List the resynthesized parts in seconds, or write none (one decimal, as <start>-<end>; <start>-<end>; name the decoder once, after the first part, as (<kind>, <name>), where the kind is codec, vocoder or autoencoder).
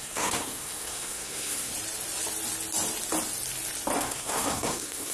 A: 0.0-1.7 (codec, SNAC); 4.0-5.1